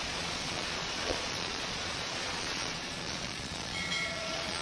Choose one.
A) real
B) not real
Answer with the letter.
B